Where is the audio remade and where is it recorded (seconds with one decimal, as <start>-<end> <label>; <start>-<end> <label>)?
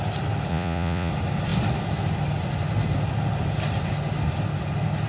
0.0-0.5 recorded; 0.5-1.1 remade; 1.1-5.1 recorded